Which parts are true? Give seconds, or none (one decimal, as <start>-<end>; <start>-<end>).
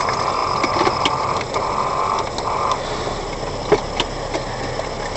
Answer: 0.0-5.2